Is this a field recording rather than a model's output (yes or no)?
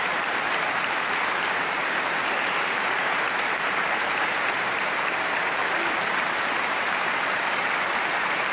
no